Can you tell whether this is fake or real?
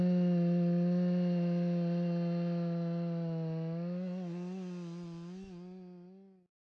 real